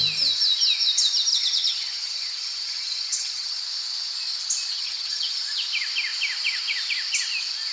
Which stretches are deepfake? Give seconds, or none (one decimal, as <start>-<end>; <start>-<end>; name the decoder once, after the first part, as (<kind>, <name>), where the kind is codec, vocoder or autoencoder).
1.3-3.6 (vocoder, HiFi-GAN); 4.8-5.4